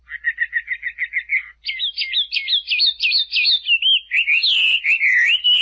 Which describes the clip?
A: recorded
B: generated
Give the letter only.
A